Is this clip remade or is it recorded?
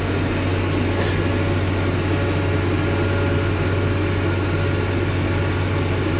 recorded